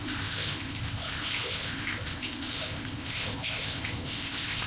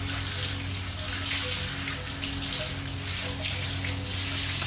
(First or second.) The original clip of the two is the second